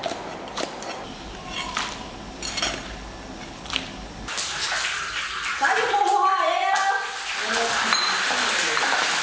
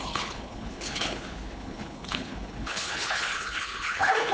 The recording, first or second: first